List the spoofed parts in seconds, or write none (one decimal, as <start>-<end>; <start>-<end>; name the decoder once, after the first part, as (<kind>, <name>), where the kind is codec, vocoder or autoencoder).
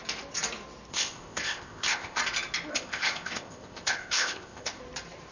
0.9-2.2 (codec, ZipCodec); 2.7-4.8